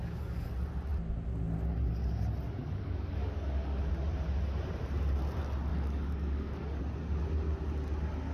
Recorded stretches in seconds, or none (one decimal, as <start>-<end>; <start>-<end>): 0.5-2.6; 3.9-5.7; 6.8-8.3